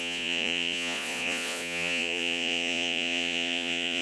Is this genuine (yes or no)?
no